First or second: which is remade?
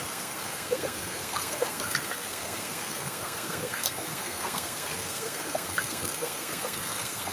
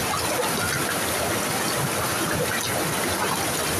first